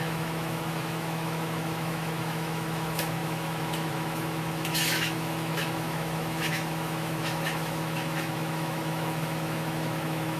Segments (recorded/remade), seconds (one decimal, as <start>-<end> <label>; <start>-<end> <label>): 0.0-10.4 remade